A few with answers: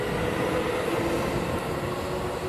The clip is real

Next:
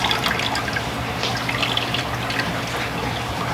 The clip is real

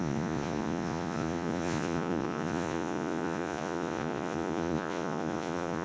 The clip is fake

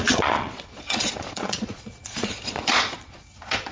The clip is fake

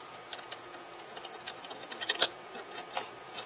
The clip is fake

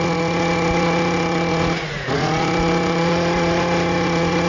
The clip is fake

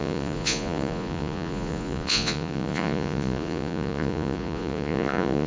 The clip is fake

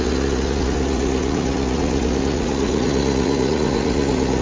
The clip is fake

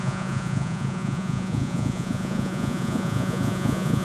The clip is fake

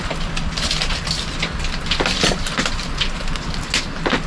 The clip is real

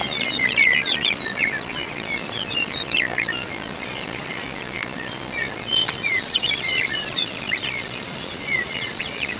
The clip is fake